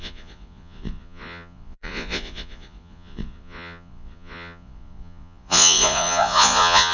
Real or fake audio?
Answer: fake